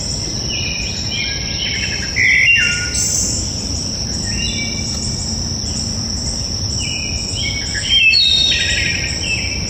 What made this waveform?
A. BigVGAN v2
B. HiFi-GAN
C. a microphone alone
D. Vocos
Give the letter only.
A